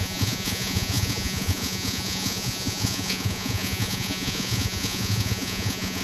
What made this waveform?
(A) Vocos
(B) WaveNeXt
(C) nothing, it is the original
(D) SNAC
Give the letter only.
A